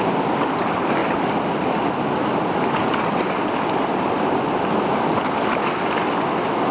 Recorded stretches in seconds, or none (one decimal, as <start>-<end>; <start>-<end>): 0.0-6.7